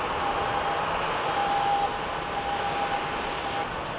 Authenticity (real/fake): real